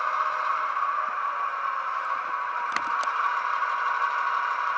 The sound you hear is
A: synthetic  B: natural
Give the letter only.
B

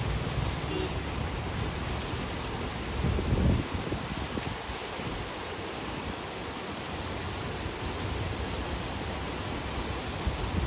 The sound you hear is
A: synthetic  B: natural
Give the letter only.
B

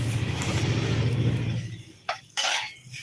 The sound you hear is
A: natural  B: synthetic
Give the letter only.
B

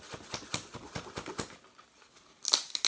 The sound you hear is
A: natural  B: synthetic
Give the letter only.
A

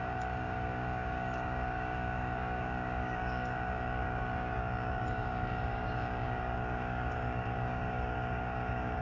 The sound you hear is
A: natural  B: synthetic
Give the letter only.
B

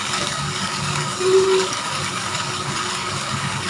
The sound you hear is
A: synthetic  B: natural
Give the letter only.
A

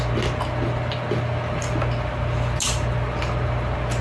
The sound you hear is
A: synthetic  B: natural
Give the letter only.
B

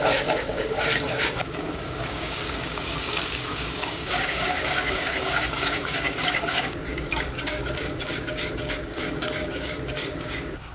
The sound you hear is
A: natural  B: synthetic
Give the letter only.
B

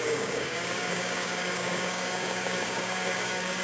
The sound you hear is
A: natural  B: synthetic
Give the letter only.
B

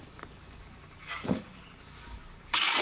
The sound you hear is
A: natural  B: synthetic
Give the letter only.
B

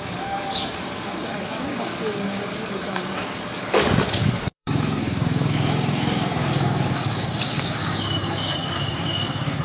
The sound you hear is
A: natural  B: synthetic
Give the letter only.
B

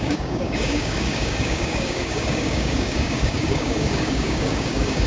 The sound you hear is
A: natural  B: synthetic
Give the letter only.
B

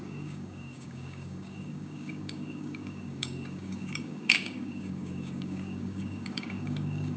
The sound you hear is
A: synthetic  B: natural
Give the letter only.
A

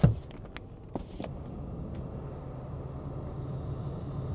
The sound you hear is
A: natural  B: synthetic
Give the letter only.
A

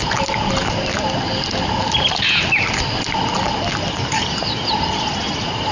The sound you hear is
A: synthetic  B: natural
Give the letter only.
B